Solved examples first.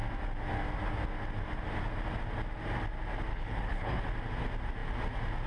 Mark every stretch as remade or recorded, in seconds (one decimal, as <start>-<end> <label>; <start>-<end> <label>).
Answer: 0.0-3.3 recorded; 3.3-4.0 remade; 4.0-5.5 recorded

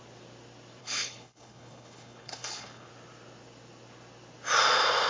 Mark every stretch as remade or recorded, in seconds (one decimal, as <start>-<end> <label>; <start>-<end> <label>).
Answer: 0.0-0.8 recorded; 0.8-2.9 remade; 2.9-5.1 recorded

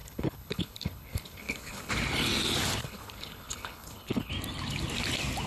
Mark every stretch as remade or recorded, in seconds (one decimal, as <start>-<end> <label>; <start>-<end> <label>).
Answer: 0.0-1.9 remade; 1.9-2.8 recorded; 2.8-4.3 remade; 4.3-5.5 recorded